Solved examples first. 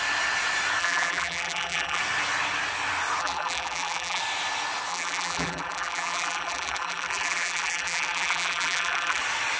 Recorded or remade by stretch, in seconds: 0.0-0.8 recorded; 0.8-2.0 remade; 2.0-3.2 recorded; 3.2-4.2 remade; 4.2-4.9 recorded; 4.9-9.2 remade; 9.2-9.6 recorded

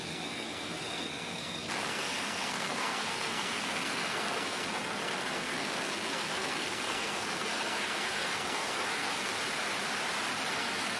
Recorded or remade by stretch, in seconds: 0.0-9.3 remade; 9.3-10.5 recorded; 10.5-11.0 remade

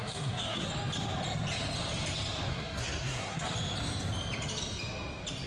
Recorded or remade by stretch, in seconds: 0.0-0.7 remade; 0.7-2.5 recorded; 2.5-3.4 remade; 3.4-5.5 recorded

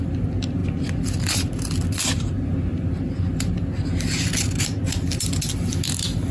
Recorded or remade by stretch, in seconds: 0.0-6.3 recorded

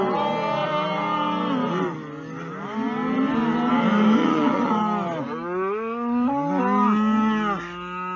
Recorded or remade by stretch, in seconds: 0.0-4.2 recorded; 4.2-4.7 remade; 4.7-8.2 recorded

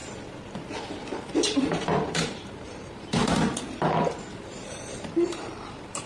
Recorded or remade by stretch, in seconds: 0.0-0.9 recorded; 0.9-3.2 remade; 3.2-4.0 recorded; 4.0-6.1 remade

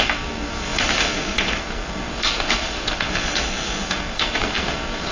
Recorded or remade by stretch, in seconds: 0.0-5.1 remade

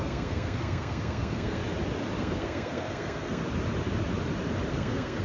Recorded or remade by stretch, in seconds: 0.0-1.6 remade; 1.6-2.2 recorded; 2.2-3.4 remade; 3.4-4.7 recorded; 4.7-5.2 remade